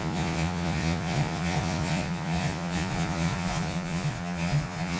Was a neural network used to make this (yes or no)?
yes